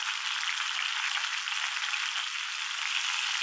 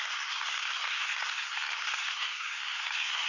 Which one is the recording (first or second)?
first